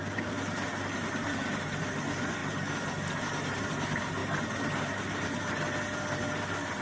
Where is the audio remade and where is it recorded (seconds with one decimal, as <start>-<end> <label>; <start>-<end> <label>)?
0.0-6.8 recorded